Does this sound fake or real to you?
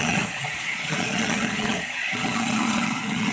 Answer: fake